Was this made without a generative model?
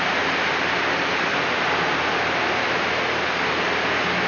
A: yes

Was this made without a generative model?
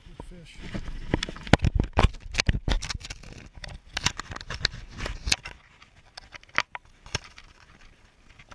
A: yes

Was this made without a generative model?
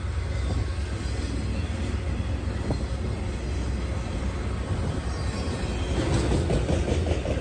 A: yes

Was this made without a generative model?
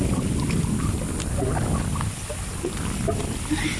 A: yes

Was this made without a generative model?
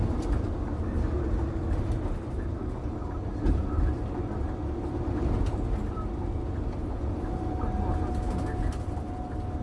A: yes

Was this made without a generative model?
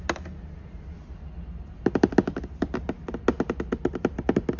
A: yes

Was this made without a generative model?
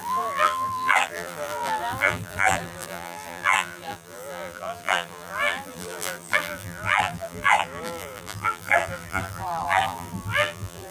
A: no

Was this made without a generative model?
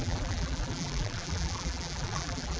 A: no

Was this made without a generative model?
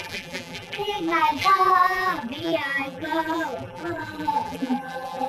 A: no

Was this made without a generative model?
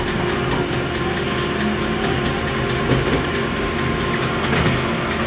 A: yes